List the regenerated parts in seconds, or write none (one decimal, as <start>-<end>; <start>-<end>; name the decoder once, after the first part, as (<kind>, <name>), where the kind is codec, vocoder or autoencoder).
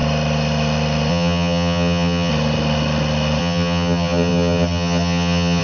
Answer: 1.1-2.3 (vocoder, HiFi-GAN); 3.4-5.6